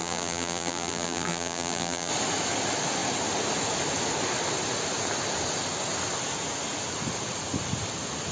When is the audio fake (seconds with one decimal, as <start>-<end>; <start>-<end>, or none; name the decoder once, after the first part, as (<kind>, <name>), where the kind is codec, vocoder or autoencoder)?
0.0-2.1 (vocoder, BigVGAN v2)